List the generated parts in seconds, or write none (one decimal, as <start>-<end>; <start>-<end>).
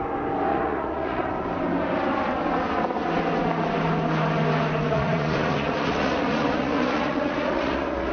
0.5-1.3; 4.9-8.1